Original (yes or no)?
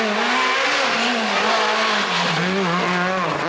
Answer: yes